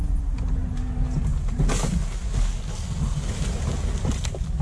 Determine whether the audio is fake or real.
real